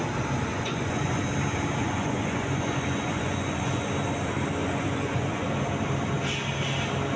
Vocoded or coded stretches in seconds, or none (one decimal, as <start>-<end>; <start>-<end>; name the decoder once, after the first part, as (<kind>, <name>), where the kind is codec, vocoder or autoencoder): 0.5-1.2 (vocoder, Vocos); 1.8-3.9; 4.6-5.5